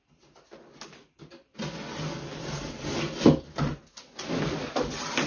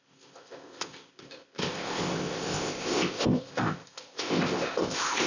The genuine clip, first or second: first